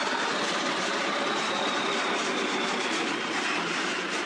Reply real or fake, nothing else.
fake